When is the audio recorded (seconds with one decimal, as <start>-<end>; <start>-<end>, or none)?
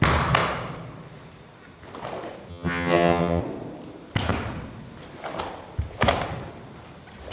0.0-2.5; 3.4-7.3